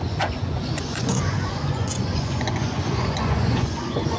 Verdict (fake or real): fake